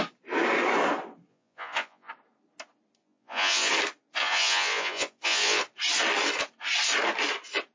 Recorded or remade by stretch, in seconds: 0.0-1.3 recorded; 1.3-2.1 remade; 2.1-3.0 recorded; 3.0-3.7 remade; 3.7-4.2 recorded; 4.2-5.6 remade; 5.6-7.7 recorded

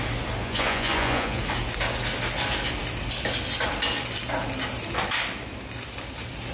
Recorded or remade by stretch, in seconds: 0.0-0.4 recorded; 0.4-1.4 remade; 1.4-6.5 recorded

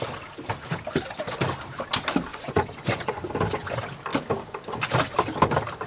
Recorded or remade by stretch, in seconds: 0.0-2.3 recorded; 2.3-3.2 remade; 3.2-5.9 recorded

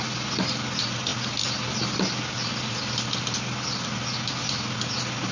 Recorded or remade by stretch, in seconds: 0.0-5.3 recorded

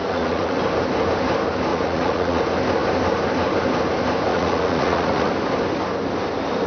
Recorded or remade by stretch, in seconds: 0.0-0.6 remade; 0.6-1.7 recorded; 1.7-2.4 remade; 2.4-4.3 recorded; 4.3-5.3 remade; 5.3-6.7 recorded